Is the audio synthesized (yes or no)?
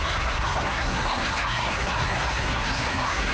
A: yes